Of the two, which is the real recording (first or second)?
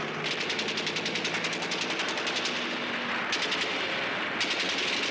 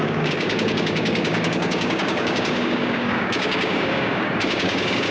first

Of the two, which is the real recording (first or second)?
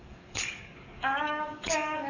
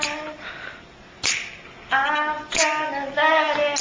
second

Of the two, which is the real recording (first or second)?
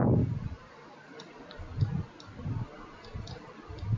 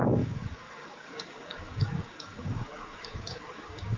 first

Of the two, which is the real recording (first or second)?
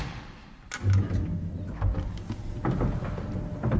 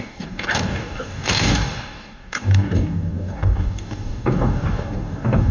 first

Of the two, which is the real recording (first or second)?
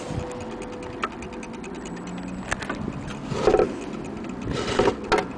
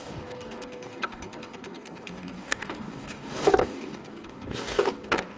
first